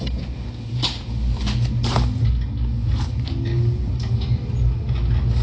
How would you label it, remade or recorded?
recorded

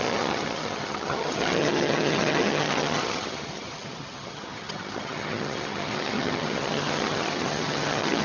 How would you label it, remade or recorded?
remade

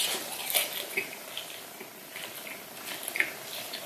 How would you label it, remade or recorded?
remade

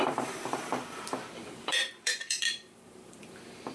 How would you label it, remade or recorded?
remade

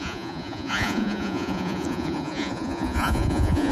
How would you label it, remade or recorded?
remade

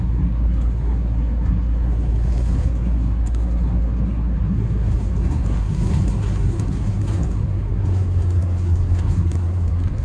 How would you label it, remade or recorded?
remade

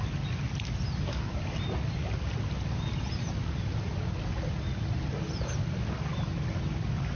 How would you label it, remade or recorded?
recorded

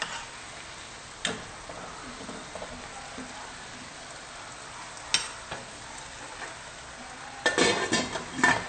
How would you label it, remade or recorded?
recorded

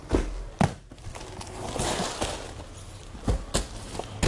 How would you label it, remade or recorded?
recorded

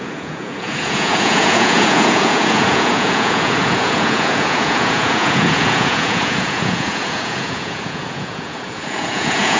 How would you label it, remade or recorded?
remade